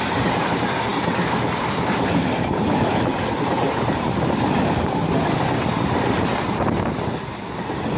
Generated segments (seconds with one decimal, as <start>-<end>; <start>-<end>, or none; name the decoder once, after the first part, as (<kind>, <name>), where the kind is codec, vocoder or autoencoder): none